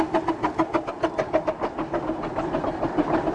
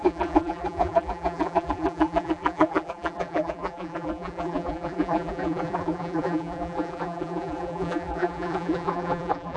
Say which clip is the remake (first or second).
second